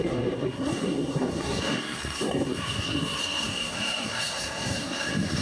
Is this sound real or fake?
fake